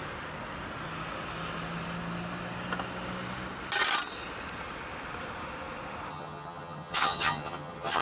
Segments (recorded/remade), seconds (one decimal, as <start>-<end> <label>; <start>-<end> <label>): 0.0-6.1 recorded; 6.1-8.0 remade